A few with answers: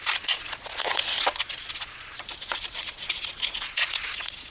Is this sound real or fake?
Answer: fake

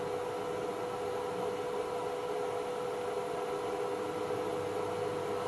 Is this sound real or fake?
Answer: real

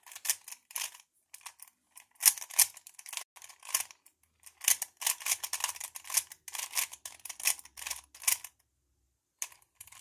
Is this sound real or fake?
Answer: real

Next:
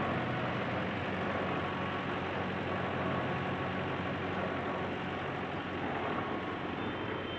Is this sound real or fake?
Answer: real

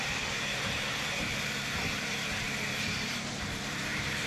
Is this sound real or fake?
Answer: fake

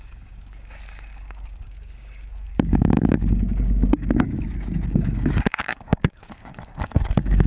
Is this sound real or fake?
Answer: fake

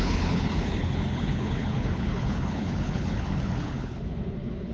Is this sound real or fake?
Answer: fake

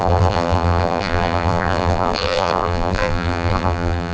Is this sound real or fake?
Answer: fake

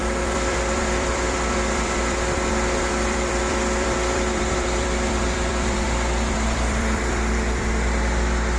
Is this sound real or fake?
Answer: fake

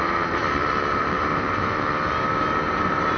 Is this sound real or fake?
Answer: fake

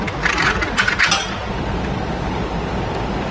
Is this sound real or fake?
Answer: real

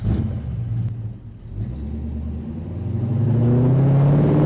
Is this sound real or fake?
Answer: real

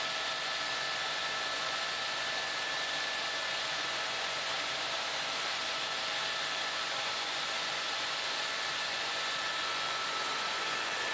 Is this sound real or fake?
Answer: fake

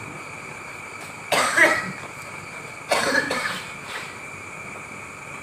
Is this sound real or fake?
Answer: fake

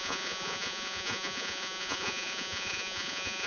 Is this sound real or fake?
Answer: fake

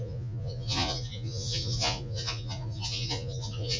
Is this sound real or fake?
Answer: fake